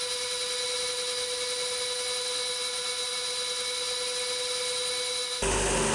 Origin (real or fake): real